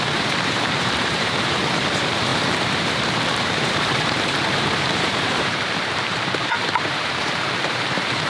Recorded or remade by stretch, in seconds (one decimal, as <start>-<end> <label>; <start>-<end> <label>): 0.0-8.3 remade